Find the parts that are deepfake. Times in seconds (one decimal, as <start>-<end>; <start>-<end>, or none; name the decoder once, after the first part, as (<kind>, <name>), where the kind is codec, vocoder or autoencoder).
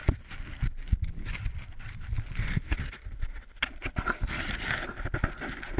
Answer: none